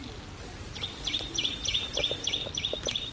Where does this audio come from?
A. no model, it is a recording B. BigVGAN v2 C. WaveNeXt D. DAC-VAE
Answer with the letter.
A